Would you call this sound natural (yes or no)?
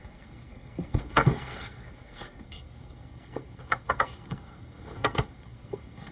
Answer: no